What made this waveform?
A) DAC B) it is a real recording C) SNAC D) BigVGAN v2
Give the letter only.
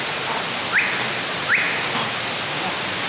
B